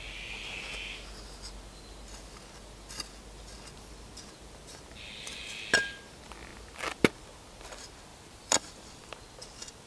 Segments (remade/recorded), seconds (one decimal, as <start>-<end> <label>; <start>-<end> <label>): 0.0-8.1 recorded; 8.1-9.0 remade; 9.0-9.9 recorded